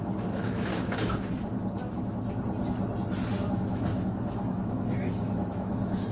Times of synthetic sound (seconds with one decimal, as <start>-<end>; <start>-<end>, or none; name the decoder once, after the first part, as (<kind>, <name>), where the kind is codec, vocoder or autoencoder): 0.0-0.7 (autoencoder, DAC-VAE); 3.4-6.1